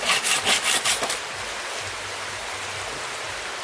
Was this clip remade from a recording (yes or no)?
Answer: no